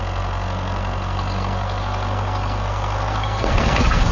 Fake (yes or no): yes